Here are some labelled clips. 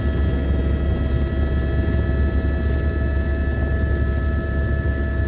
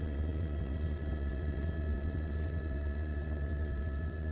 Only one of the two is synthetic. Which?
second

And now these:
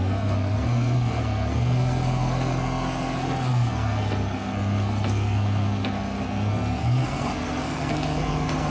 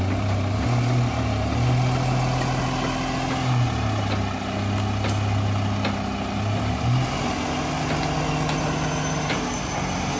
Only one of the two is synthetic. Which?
first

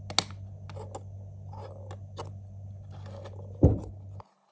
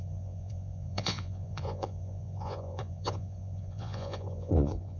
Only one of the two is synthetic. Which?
second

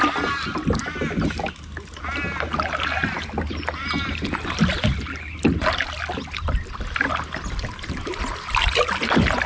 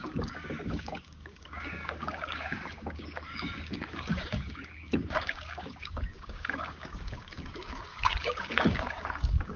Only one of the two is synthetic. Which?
second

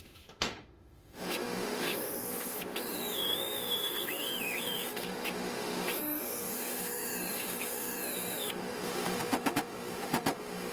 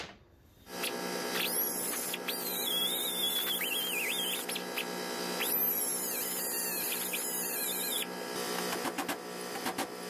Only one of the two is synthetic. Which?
first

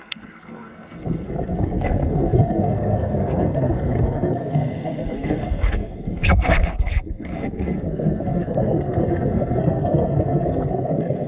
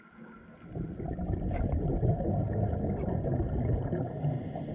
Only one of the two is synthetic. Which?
first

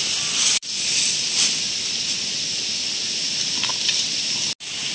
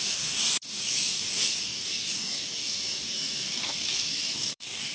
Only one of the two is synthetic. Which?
second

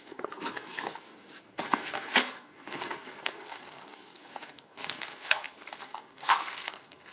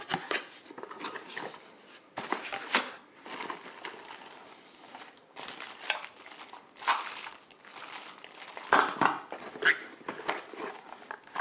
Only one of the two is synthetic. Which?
first